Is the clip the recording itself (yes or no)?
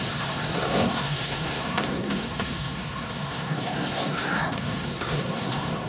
no